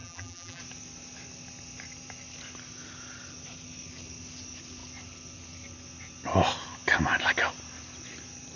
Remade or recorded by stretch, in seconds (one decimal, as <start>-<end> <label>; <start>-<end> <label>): 0.0-0.6 remade; 0.6-8.6 recorded